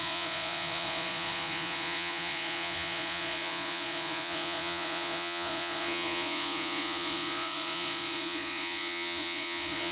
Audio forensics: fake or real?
fake